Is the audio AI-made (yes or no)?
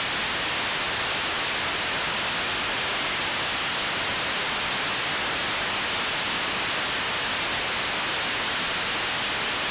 no